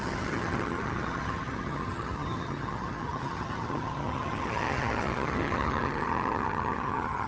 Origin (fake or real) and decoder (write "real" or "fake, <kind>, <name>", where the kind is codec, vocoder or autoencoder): fake, vocoder, HiFi-GAN